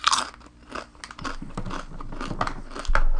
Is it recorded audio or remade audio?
recorded